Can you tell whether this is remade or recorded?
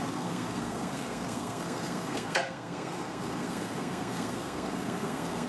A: remade